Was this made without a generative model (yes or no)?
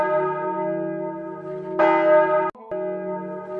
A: yes